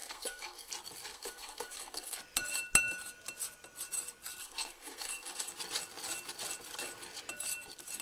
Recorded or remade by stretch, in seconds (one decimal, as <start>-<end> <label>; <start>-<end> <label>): 0.0-0.7 remade; 0.7-1.1 recorded; 1.1-2.2 remade; 2.2-4.4 recorded; 4.4-5.5 remade; 5.5-8.0 recorded